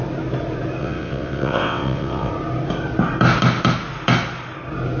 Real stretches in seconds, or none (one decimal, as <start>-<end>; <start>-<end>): 0.0-0.8; 2.3-5.0